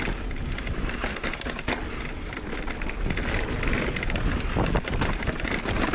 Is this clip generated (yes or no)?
no